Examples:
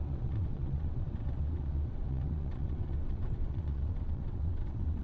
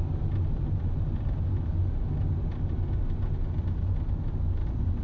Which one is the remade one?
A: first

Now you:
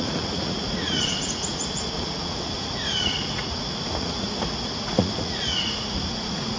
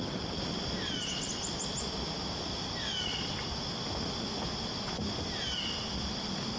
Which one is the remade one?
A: first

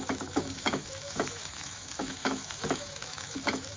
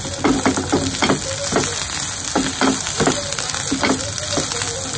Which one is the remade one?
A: first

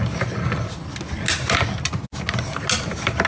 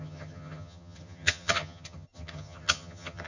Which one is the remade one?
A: second